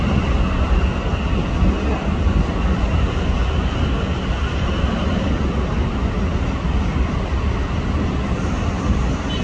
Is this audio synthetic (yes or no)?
no